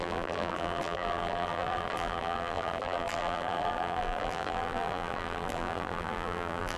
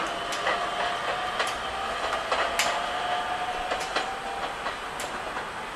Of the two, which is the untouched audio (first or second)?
second